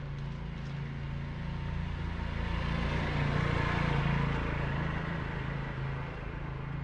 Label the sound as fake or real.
real